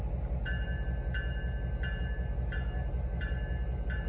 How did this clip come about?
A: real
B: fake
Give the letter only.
A